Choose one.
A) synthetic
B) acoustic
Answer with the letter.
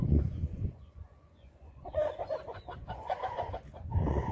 A